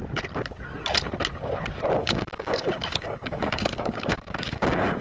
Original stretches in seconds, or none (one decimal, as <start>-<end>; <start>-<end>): 0.0-2.0